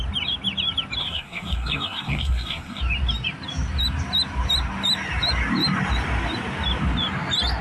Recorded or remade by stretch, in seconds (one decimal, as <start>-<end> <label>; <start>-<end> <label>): 0.0-1.0 recorded; 1.0-2.8 remade; 2.8-7.6 recorded

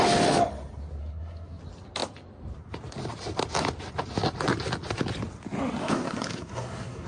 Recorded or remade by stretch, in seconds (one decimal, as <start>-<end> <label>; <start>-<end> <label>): 0.0-1.0 recorded; 1.0-1.6 remade; 1.6-5.8 recorded; 5.8-7.1 remade

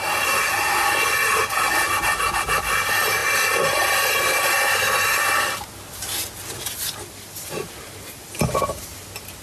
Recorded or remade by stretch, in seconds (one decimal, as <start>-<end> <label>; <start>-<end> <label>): 0.0-9.4 recorded

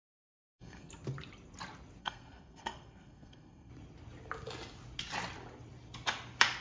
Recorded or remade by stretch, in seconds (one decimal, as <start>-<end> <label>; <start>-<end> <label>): 0.0-0.9 remade; 0.9-2.0 recorded; 2.0-3.7 remade; 3.7-6.6 recorded

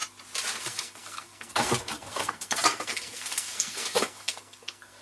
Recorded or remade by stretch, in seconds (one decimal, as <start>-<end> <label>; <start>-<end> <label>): 0.0-0.6 recorded; 0.6-5.0 remade